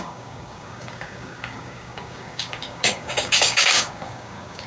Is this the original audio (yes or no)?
no